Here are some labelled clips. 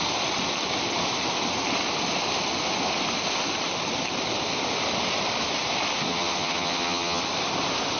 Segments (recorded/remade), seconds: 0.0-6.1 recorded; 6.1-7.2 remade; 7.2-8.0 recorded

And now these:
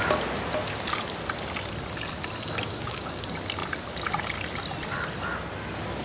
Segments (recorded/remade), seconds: 0.0-2.7 recorded; 2.7-3.2 remade; 3.2-6.0 recorded